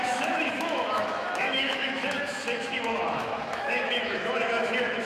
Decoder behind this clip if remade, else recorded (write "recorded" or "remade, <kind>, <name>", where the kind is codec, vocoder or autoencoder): remade, autoencoder, DAC-VAE